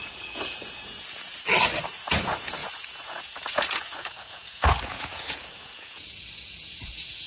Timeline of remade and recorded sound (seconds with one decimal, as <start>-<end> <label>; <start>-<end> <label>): 0.0-1.3 remade; 1.3-1.8 recorded; 1.8-7.3 remade